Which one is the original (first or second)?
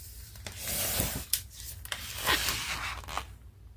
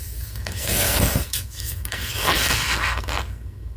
first